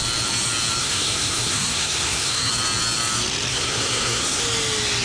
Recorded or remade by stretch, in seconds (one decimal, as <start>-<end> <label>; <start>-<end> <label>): 0.0-0.8 recorded; 0.8-2.5 remade; 2.5-3.5 recorded; 3.5-4.4 remade; 4.4-5.0 recorded